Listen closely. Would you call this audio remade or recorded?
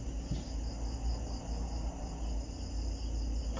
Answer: recorded